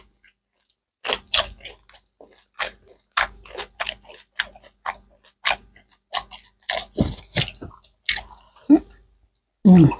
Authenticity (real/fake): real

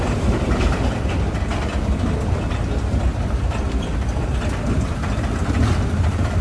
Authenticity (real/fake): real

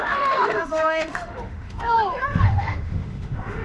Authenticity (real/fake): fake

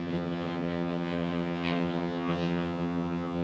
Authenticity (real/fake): fake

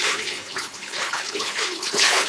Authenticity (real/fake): fake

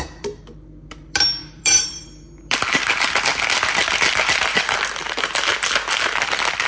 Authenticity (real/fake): fake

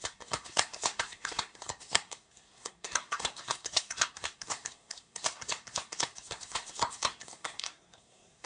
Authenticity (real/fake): fake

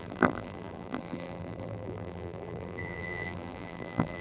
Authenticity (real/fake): fake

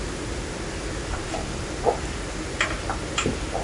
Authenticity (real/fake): real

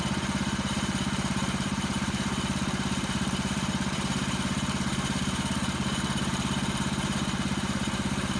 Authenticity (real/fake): fake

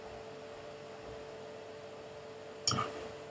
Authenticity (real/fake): real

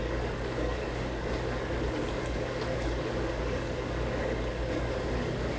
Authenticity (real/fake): fake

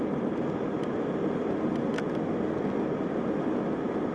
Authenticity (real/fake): real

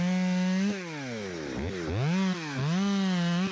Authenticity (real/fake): real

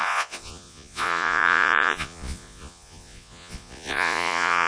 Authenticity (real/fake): fake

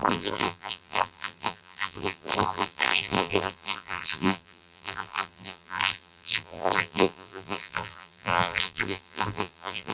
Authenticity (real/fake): fake